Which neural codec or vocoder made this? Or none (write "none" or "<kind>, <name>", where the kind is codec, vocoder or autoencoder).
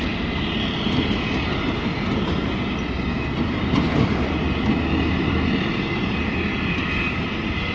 vocoder, BigVGAN v2